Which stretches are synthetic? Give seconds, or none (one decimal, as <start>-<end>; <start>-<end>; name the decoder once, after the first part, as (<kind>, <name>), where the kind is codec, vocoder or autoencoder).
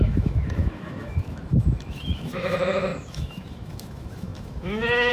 0.0-5.1 (autoencoder, DAC-VAE)